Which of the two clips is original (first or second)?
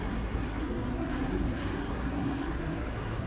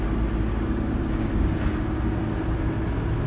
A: second